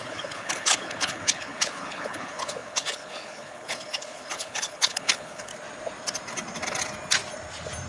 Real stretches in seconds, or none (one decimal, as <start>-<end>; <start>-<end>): 5.5-7.9